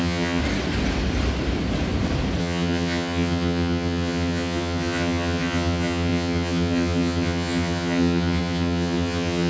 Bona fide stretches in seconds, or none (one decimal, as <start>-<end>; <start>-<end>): 0.4-2.4